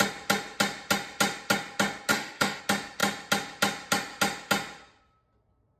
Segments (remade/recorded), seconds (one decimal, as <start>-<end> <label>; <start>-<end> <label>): 0.0-2.1 recorded; 2.1-2.6 remade; 2.6-5.8 recorded